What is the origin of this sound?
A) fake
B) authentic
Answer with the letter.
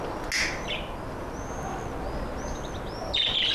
B